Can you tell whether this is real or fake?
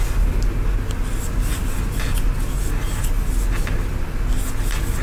real